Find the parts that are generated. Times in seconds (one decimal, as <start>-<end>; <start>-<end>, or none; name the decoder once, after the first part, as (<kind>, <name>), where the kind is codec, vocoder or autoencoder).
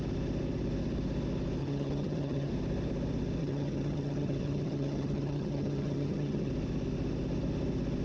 1.6-2.5 (vocoder, HiFi-GAN); 3.4-6.5